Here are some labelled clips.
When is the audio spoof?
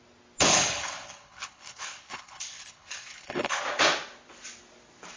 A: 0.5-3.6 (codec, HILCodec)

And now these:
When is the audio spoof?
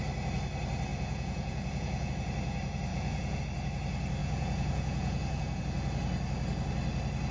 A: 0.9-2.1 (vocoder, Vocos); 2.9-3.4; 4.2-5.6